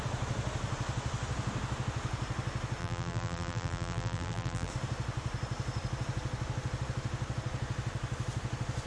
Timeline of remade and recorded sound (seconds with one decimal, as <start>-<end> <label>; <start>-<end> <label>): 0.0-2.8 recorded; 2.8-4.7 remade; 4.7-8.9 recorded